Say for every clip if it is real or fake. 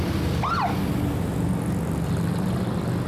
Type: real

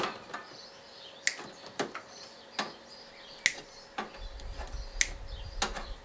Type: real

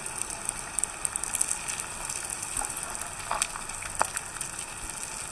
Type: real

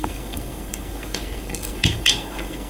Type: fake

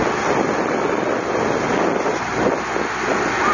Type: real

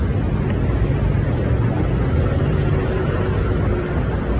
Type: real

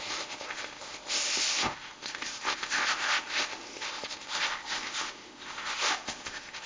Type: fake